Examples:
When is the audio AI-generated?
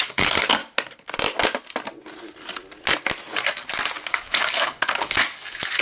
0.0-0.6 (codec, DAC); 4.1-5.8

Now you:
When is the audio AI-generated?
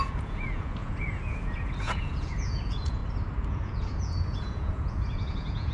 0.0-3.0 (vocoder, Vocos); 3.5-5.7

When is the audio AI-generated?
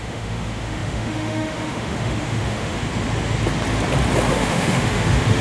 0.0-2.8 (autoencoder, DAC-VAE); 4.3-5.4